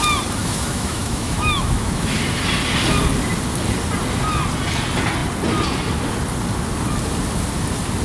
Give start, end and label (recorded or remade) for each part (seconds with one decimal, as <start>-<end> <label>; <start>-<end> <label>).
0.0-0.4 recorded; 0.4-2.2 remade; 2.2-8.0 recorded